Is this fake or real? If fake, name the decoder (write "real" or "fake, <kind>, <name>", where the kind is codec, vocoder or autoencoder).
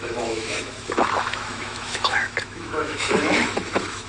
fake, autoencoder, DAC-VAE